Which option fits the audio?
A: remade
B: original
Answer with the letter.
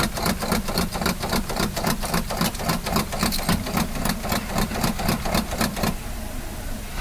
B